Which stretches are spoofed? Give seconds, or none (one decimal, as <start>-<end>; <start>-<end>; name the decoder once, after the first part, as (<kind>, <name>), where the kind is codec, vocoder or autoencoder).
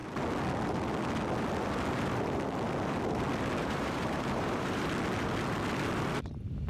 3.6-4.9 (vocoder, BigVGAN v2)